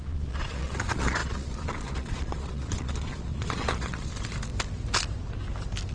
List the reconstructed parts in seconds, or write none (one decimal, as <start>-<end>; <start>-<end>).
0.0-4.1